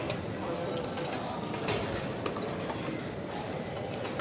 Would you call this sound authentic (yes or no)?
yes